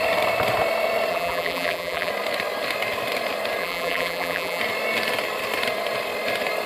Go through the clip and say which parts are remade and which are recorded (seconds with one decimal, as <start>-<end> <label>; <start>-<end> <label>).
0.0-1.1 recorded; 1.1-2.1 remade; 2.1-3.6 recorded; 3.6-4.6 remade; 4.6-6.7 recorded